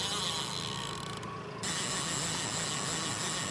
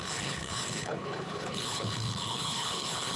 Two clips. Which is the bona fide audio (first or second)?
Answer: first